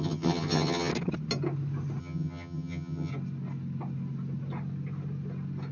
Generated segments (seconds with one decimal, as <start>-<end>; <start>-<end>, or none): 0.0-0.9; 2.0-3.1